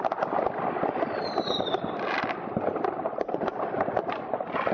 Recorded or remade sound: recorded